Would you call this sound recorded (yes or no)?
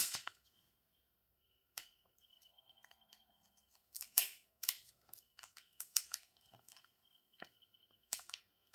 no